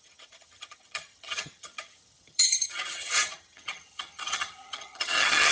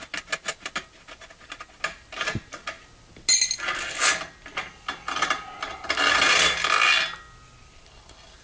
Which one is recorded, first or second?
second